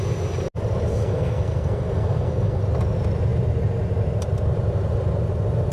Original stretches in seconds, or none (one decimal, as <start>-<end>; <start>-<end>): 0.0-0.9; 2.6-5.7